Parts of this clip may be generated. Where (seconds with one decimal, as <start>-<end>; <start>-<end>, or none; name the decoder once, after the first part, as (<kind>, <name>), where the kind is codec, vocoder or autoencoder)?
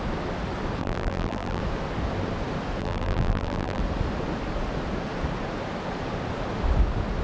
0.8-1.6 (vocoder, BigVGAN v2); 2.8-3.8